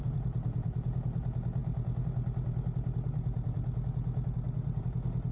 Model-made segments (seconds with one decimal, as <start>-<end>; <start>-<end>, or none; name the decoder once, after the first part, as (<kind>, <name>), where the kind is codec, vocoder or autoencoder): none